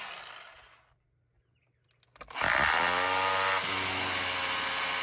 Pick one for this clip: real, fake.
real